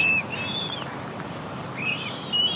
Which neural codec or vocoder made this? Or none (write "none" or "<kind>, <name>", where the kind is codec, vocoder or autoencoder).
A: none